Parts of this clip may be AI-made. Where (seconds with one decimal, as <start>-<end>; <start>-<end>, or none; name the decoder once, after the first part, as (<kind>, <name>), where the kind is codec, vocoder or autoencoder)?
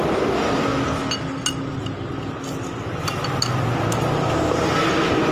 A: none